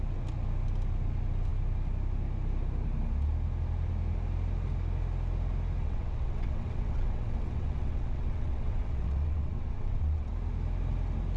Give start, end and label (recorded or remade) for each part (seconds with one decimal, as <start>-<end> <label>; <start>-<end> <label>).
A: 0.0-5.8 recorded; 5.8-10.3 remade; 10.3-11.4 recorded